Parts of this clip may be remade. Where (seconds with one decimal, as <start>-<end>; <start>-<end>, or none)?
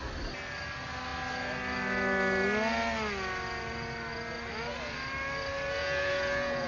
5.8-6.7